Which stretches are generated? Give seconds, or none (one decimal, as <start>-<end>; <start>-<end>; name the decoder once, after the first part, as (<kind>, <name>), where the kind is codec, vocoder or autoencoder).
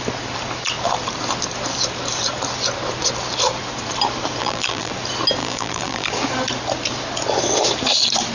4.4-4.9 (vocoder, BigVGAN v2); 5.4-6.1